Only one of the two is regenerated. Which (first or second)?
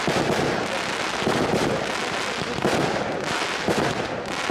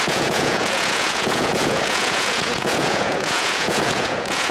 second